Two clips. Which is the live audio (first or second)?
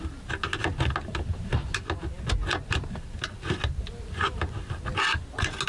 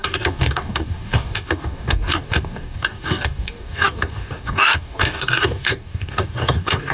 first